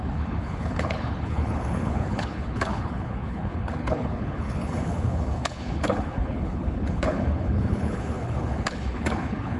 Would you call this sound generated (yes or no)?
yes